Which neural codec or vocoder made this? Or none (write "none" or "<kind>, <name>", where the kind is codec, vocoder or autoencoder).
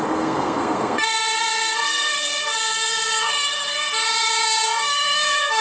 codec, SNAC